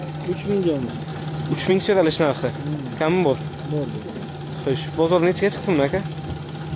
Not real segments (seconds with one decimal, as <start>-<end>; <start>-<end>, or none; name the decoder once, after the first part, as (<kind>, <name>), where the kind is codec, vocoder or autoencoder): none